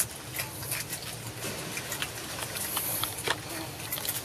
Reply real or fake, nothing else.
real